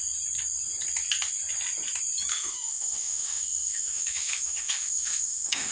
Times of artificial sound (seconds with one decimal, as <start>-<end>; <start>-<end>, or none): 2.3-5.7